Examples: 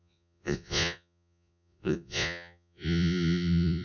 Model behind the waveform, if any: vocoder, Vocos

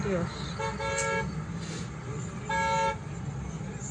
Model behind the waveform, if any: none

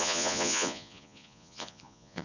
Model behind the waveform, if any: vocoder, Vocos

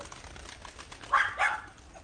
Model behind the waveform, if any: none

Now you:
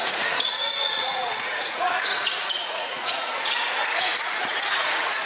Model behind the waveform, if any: vocoder, Vocos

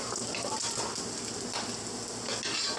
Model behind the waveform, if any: none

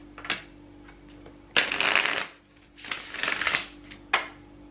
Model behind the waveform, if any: none